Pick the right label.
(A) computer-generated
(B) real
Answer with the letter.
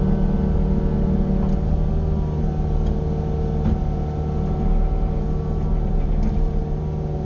B